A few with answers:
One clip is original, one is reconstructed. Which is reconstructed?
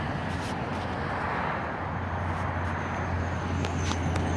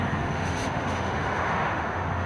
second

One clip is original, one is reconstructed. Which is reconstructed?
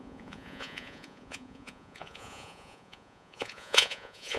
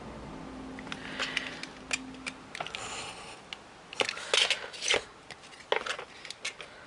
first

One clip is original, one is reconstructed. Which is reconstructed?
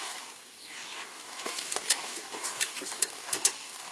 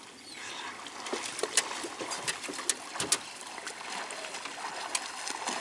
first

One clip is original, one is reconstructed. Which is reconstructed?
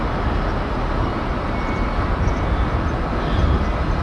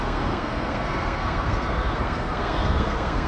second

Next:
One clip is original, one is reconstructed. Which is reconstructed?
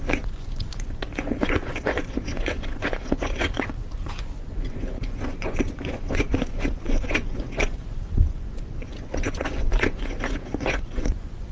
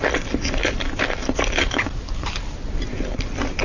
first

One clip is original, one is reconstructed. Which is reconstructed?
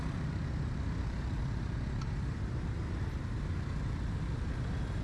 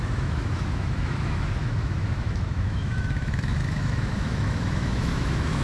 second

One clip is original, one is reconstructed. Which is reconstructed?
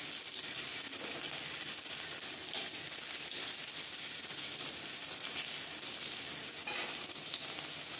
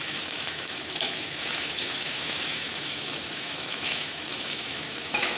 second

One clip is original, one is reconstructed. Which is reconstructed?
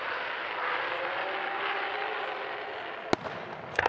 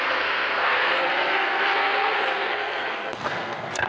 second